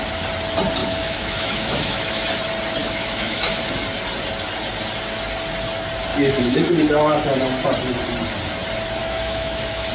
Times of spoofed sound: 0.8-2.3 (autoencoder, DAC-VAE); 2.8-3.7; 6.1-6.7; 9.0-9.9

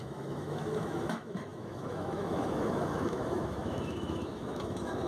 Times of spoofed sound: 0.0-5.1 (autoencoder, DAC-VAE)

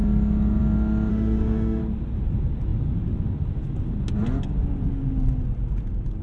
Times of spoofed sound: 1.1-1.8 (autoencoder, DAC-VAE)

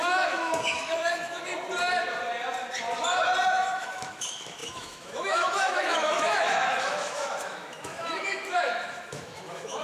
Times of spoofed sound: 0.0-1.5 (autoencoder, DAC-VAE); 3.5-9.8

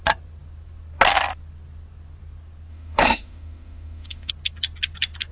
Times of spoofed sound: 2.7-4.3 (autoencoder, DAC-VAE)